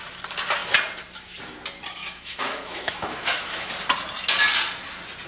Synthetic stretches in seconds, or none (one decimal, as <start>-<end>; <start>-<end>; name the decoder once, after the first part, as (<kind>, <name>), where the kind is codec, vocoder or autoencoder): 2.0-3.7 (autoencoder, DAC-VAE)